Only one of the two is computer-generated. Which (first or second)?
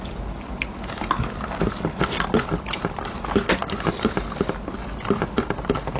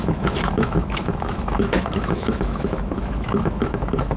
second